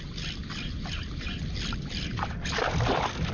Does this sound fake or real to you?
real